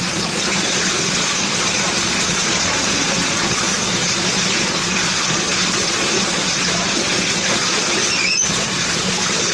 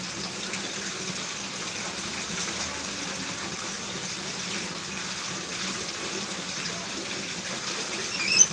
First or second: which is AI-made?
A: first